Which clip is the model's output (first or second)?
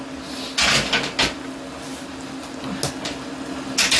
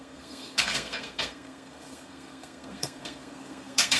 second